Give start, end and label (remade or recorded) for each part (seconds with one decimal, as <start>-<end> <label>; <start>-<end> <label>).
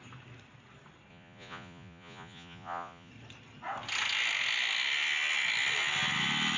0.0-1.1 recorded; 1.1-3.1 remade; 3.1-6.6 recorded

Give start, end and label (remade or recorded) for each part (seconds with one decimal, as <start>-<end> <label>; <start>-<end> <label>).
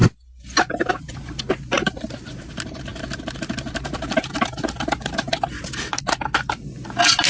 0.0-7.3 recorded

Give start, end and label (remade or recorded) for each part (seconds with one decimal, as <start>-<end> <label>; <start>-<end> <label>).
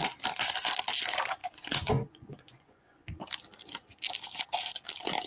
0.0-1.4 recorded; 1.4-3.2 remade; 3.2-5.3 recorded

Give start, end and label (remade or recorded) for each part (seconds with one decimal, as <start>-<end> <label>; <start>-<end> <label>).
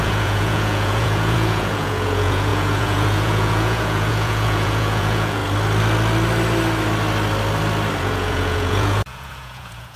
0.0-5.4 remade; 5.4-8.0 recorded; 8.0-10.0 remade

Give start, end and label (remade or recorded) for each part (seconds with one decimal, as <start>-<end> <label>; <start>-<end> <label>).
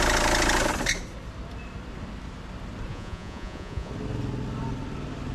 0.0-2.9 recorded; 2.9-3.9 remade; 3.9-5.3 recorded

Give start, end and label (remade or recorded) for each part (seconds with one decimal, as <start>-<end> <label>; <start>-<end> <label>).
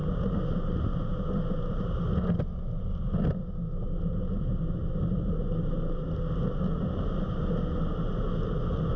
0.0-9.0 recorded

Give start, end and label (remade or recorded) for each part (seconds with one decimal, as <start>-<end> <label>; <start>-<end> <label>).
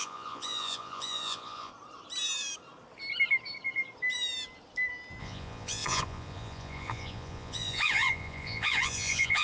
0.0-1.7 remade; 1.7-5.2 recorded; 5.2-9.4 remade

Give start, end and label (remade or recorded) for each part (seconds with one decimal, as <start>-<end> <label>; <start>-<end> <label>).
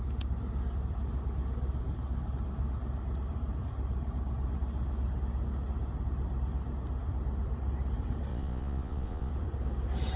0.0-8.3 recorded; 8.3-9.3 remade; 9.3-10.2 recorded